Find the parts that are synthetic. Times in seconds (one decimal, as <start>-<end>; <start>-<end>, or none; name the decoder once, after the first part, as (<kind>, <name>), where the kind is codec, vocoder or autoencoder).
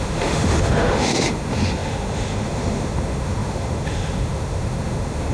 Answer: 0.0-5.3 (autoencoder, DAC-VAE)